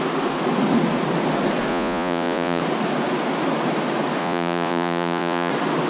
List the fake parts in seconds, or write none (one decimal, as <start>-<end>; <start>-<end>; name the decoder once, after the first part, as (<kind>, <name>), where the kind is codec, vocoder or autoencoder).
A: 1.7-2.6 (vocoder, Vocos); 4.2-5.5